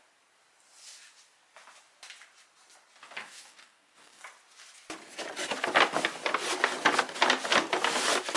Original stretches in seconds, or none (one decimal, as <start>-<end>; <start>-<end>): 0.0-3.0; 4.2-8.4